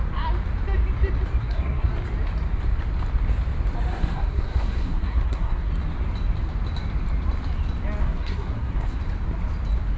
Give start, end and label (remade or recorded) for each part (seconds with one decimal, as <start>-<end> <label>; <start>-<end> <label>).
0.0-1.4 recorded; 1.4-1.9 remade; 1.9-3.9 recorded; 3.9-5.7 remade; 5.7-8.0 recorded; 8.0-9.0 remade; 9.0-10.0 recorded